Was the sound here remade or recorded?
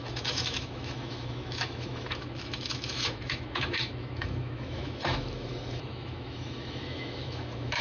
remade